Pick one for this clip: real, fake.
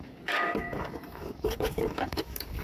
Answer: fake